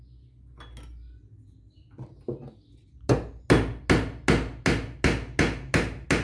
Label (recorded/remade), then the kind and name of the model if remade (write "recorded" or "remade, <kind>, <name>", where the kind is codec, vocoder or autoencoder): recorded